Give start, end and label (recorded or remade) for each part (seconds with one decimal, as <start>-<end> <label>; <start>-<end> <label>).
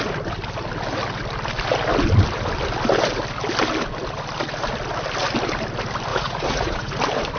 0.0-6.1 recorded; 6.1-6.9 remade; 6.9-7.4 recorded